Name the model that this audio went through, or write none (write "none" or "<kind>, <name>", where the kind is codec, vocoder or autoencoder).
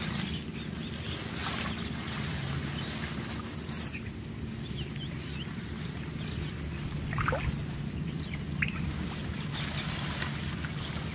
none